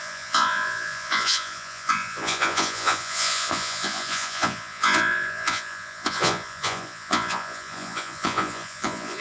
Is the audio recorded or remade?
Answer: remade